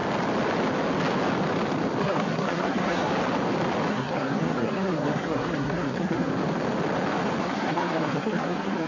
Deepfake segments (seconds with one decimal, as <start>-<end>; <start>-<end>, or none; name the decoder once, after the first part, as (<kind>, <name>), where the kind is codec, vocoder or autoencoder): 2.0-3.1 (codec, SNAC); 3.9-6.3; 7.4-8.9